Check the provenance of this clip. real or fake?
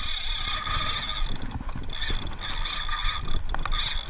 real